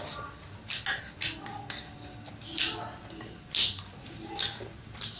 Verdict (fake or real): real